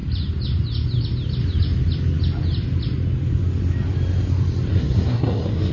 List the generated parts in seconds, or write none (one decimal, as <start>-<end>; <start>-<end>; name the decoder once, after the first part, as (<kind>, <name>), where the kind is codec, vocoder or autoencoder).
4.7-5.7 (codec, SNAC)